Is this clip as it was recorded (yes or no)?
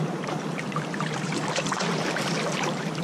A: no